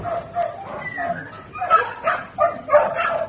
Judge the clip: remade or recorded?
recorded